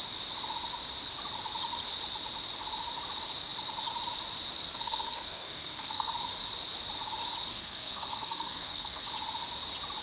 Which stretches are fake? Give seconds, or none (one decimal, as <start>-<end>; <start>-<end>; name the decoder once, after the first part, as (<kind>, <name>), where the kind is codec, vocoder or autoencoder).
4.7-6.1 (codec, SNAC); 7.5-9.1